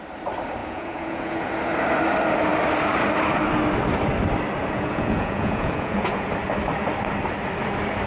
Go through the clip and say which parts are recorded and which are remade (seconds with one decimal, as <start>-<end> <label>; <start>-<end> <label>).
0.0-0.6 recorded; 0.6-1.5 remade; 1.5-4.6 recorded; 4.6-6.3 remade; 6.3-8.1 recorded